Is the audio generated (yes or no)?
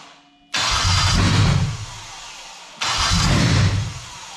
no